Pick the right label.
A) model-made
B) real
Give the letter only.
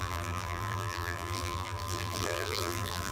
A